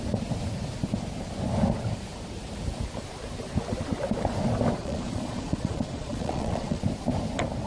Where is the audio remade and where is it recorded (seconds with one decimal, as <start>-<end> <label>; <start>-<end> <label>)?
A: 0.0-4.8 recorded; 4.8-6.8 remade; 6.8-7.7 recorded